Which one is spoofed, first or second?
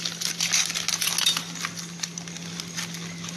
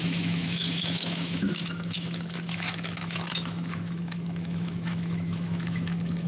second